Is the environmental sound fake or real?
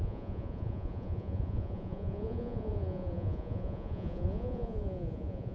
fake